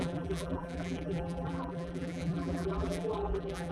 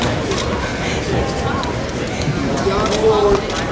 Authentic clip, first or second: second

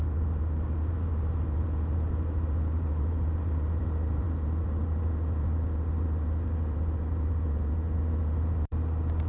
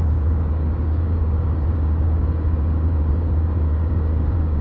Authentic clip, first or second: first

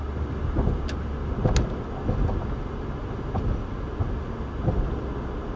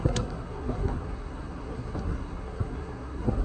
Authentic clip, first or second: first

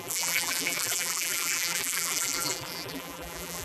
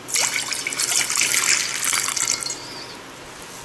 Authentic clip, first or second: second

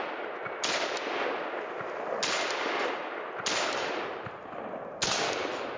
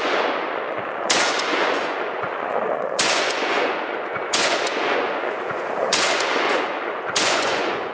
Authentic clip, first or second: first